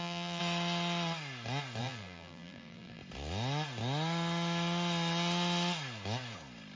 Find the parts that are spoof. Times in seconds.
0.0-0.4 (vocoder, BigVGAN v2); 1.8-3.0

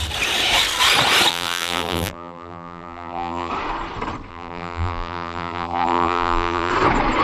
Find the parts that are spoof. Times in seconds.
1.3-3.5 (vocoder, BigVGAN v2); 4.3-6.7

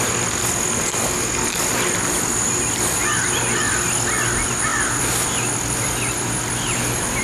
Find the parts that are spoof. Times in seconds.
none